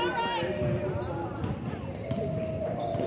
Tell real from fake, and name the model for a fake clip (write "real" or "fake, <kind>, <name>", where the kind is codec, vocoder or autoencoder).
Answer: real